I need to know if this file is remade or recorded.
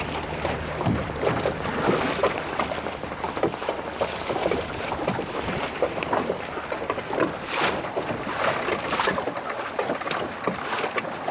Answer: recorded